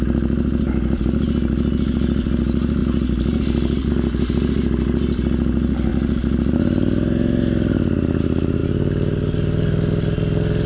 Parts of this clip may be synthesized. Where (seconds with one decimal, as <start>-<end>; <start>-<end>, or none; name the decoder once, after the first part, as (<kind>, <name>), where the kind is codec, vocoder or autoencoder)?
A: none